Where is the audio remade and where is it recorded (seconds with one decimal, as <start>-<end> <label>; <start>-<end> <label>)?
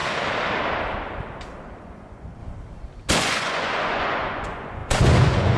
0.0-1.8 recorded; 1.8-2.4 remade; 2.4-3.1 recorded; 3.1-5.6 remade